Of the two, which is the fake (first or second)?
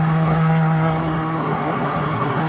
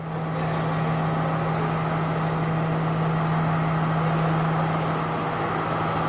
first